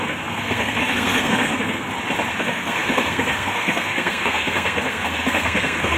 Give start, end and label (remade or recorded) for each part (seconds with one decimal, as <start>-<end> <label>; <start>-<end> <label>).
0.0-1.9 remade; 1.9-2.4 recorded; 2.4-6.0 remade